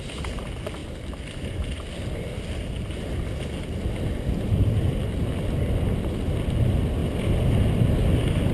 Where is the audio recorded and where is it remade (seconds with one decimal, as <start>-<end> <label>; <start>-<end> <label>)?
0.0-8.5 recorded